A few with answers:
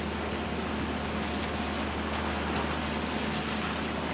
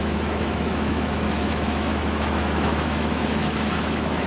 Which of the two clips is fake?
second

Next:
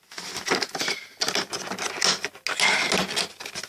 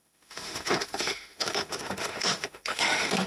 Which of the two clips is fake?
second